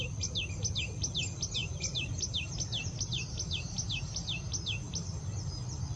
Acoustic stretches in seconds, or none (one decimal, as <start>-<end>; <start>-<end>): 0.0-1.6; 5.2-6.0